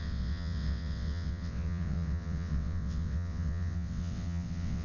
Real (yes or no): no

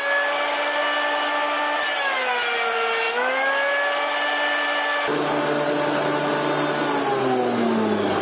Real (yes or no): yes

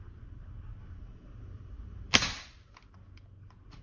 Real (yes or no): yes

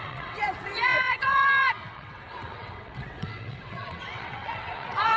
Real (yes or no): no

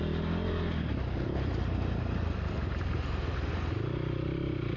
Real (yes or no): yes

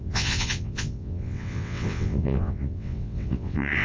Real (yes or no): no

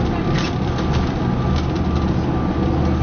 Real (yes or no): yes